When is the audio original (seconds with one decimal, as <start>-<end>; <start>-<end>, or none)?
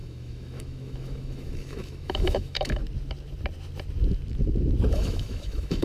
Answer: 2.8-4.9